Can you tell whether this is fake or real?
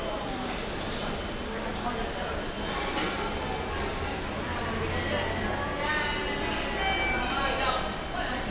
real